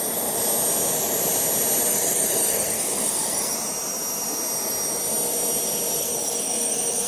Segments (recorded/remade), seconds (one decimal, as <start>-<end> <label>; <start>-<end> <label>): 0.0-1.9 recorded; 1.9-3.5 remade; 3.5-6.0 recorded; 6.0-7.1 remade